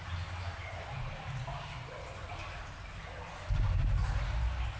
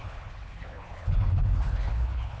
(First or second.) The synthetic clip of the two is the second